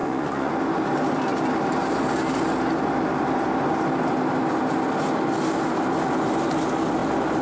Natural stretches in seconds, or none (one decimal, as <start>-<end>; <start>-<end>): 0.5-7.4